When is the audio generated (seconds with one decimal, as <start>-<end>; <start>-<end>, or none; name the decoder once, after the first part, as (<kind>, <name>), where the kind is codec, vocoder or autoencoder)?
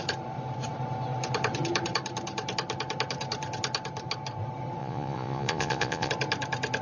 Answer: 4.8-6.1 (vocoder, Vocos)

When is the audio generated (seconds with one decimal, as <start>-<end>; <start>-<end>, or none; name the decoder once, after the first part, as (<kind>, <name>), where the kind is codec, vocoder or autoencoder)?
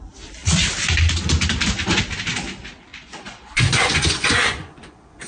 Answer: 2.9-5.3 (vocoder, Vocos)